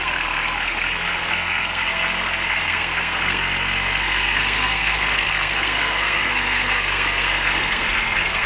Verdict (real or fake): fake